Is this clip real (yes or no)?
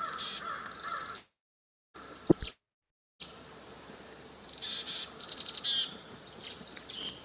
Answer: yes